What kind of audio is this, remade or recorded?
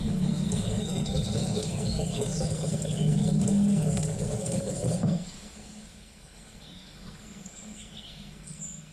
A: remade